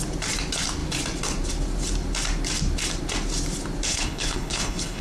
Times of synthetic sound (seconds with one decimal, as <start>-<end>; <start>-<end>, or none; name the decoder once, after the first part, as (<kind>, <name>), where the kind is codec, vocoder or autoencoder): 3.9-5.0 (codec, HILCodec)